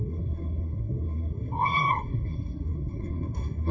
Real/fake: fake